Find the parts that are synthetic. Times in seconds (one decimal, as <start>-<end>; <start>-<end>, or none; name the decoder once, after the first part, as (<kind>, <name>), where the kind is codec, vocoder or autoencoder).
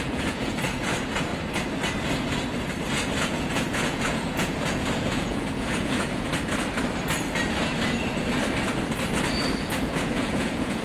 0.0-1.3 (vocoder, Vocos); 3.2-6.3; 9.6-10.8